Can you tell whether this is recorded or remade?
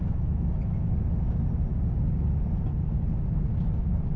recorded